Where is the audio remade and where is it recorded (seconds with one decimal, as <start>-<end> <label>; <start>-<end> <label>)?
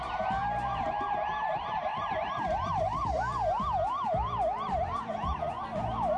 0.0-1.9 recorded; 1.9-5.5 remade; 5.5-6.2 recorded